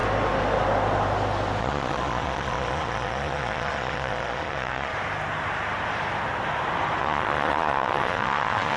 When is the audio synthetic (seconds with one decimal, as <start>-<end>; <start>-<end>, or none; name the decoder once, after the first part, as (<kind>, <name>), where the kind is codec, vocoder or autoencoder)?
1.6-4.9 (vocoder, Vocos); 7.0-8.8